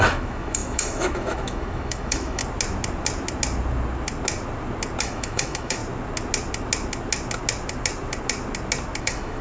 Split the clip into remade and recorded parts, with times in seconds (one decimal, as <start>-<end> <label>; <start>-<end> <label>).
0.0-2.4 remade; 2.4-5.0 recorded; 5.0-5.8 remade; 5.8-9.0 recorded; 9.0-9.4 remade